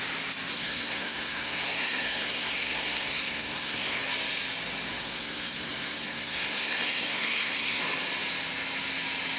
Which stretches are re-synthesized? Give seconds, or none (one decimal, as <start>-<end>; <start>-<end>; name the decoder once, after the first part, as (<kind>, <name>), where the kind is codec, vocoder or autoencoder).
0.5-4.0 (codec, SNAC); 4.9-7.8